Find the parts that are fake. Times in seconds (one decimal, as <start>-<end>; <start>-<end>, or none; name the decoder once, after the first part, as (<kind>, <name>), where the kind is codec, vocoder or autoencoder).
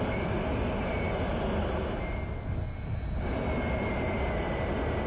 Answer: none